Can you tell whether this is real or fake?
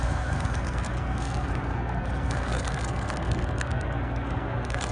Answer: fake